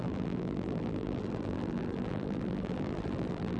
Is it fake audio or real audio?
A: fake